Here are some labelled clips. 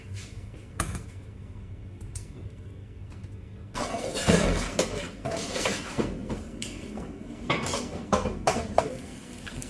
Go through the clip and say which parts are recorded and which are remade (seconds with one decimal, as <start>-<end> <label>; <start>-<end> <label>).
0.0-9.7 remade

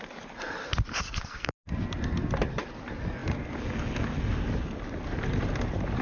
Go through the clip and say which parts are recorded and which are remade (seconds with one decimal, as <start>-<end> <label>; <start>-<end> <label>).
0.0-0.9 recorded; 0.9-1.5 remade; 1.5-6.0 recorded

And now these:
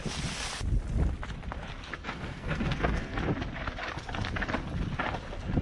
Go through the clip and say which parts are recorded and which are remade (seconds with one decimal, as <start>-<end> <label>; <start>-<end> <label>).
0.0-2.0 recorded; 2.0-3.2 remade; 3.2-5.6 recorded

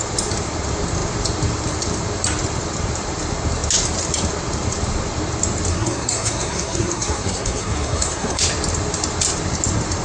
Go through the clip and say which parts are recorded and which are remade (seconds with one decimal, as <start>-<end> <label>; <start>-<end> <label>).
0.0-5.7 recorded; 5.7-8.4 remade; 8.4-10.0 recorded

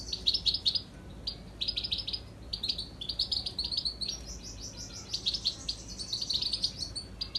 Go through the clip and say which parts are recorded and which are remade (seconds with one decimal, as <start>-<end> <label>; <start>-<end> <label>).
0.0-7.4 recorded

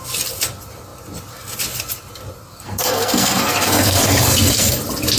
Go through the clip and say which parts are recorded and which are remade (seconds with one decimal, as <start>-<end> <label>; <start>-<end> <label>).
0.0-2.5 recorded; 2.5-4.8 remade; 4.8-5.2 recorded